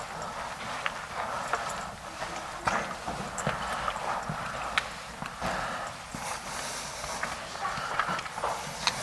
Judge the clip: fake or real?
real